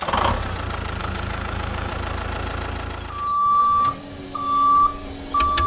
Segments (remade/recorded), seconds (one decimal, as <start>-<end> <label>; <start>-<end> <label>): 0.0-1.0 recorded; 1.0-1.9 remade; 1.9-5.7 recorded